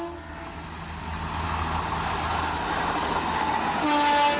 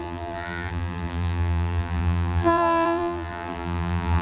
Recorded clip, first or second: first